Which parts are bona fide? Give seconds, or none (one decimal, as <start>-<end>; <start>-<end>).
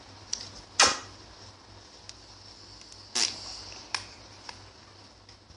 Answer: 0.0-5.6